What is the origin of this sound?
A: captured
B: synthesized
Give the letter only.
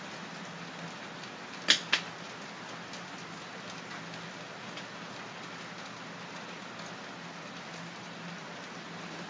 A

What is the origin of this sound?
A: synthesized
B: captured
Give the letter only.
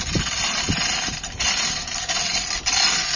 B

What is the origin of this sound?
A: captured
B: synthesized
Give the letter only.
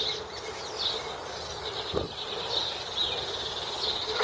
A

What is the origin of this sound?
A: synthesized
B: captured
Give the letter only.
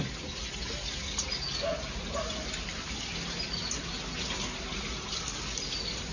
B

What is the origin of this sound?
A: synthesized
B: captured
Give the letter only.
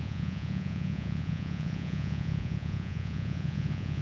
A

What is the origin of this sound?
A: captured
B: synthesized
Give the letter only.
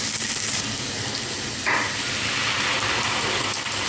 A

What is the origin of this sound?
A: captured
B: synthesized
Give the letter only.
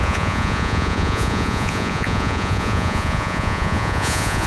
B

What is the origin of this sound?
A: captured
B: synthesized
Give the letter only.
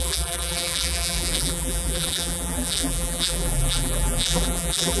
B